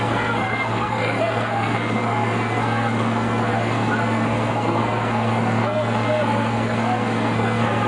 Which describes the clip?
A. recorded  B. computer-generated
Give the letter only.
B